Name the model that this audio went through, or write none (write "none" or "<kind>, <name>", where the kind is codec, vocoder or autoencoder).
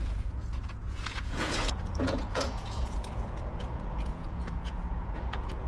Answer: vocoder, Vocos